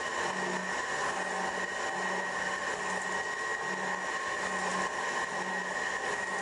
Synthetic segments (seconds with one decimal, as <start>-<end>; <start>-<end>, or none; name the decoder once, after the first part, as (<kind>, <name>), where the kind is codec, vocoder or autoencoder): none